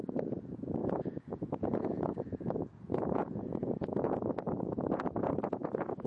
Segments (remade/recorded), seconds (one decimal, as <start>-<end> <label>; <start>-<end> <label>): 0.0-6.1 remade